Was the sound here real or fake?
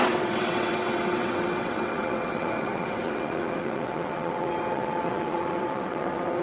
fake